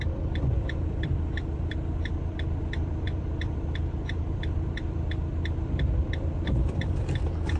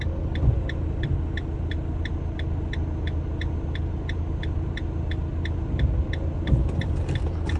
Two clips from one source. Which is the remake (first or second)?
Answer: first